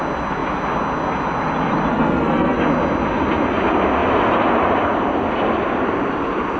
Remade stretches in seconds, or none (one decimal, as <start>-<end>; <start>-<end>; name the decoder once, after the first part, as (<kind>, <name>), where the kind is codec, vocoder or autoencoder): 1.9-2.6 (codec, SNAC)